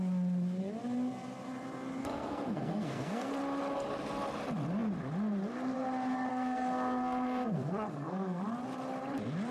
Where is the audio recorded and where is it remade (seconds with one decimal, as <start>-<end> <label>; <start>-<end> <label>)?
0.0-2.0 recorded; 2.0-3.3 remade; 3.3-6.3 recorded; 6.3-8.4 remade; 8.4-9.5 recorded